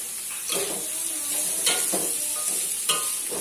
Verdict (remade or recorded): recorded